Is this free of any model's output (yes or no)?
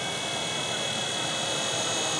yes